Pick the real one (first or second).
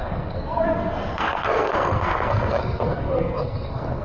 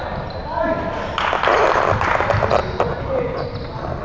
second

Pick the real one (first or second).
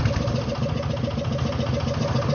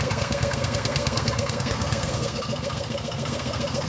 first